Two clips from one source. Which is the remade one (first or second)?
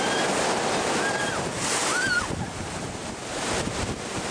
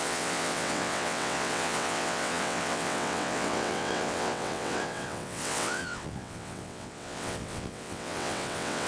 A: second